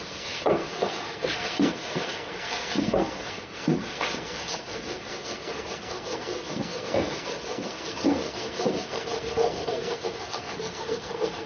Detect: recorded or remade remade